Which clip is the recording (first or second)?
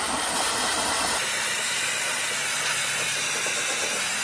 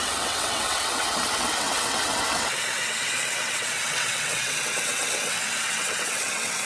first